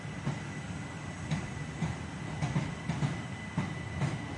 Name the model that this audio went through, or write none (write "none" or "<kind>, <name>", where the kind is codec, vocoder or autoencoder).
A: none